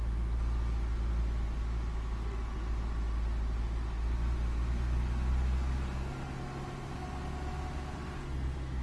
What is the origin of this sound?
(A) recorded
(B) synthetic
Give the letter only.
A